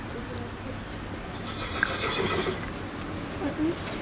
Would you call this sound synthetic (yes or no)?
no